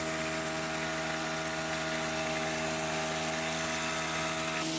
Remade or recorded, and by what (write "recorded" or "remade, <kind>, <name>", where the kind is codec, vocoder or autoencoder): recorded